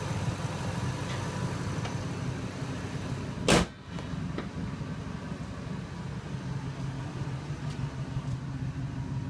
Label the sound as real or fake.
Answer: real